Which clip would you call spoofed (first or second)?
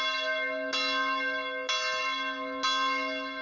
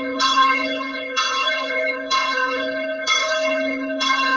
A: second